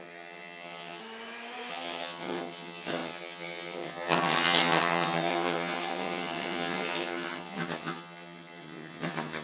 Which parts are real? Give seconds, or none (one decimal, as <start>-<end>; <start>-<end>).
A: 1.0-1.7